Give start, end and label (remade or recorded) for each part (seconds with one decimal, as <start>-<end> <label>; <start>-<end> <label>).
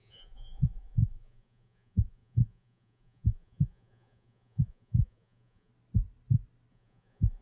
0.0-5.7 remade; 5.7-6.7 recorded; 6.7-7.4 remade